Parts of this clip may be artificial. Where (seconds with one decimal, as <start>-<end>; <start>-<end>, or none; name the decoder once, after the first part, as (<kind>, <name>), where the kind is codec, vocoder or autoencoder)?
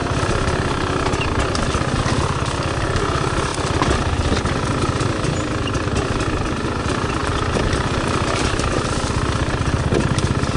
none